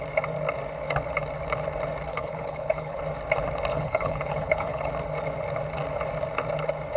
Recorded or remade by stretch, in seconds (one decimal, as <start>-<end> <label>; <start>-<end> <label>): 0.0-2.1 recorded; 2.1-3.0 remade; 3.0-3.7 recorded; 3.7-4.9 remade; 4.9-7.0 recorded

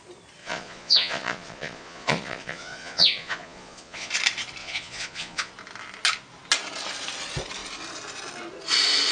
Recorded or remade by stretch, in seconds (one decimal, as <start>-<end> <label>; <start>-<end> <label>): 0.0-0.4 recorded; 0.4-4.1 remade; 4.1-4.6 recorded; 4.6-5.5 remade; 5.5-9.1 recorded

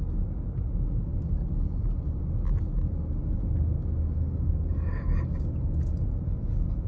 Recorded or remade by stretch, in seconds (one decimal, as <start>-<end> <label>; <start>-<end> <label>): 0.0-6.9 recorded